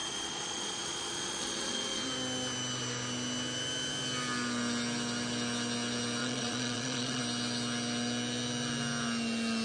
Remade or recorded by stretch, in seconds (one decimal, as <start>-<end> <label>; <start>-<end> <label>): 0.0-2.0 remade; 2.0-6.2 recorded; 6.2-7.2 remade; 7.2-9.6 recorded